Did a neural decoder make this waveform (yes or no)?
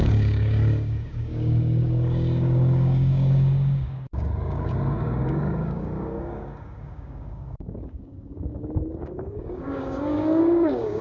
yes